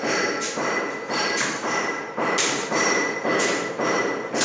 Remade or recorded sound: recorded